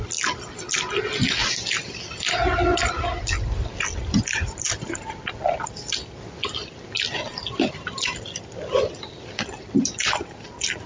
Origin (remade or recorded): recorded